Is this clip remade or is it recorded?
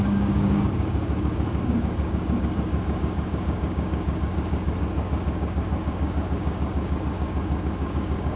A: remade